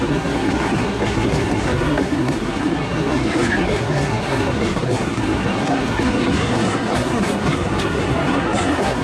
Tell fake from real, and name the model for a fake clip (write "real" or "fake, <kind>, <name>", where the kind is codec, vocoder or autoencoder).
fake, codec, SNAC